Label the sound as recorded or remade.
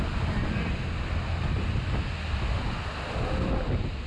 recorded